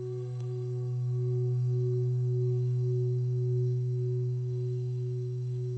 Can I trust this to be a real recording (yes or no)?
no